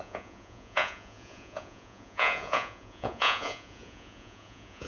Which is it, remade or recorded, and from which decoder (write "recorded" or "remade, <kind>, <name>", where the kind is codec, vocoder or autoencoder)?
remade, vocoder, Vocos